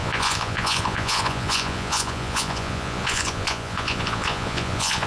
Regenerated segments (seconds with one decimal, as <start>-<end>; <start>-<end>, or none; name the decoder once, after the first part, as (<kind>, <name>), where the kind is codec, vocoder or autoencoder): 0.0-5.1 (vocoder, Vocos)